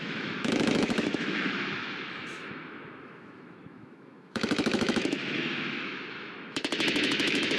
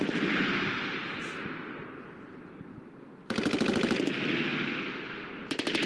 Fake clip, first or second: first